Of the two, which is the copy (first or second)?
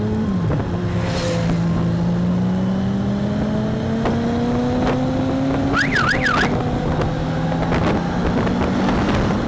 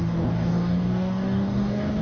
second